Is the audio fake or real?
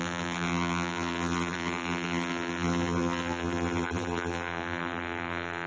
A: fake